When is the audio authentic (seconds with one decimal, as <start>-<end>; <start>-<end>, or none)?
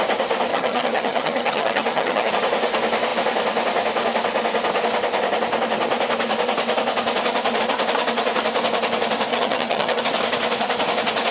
0.0-0.5; 2.3-9.3; 10.0-11.3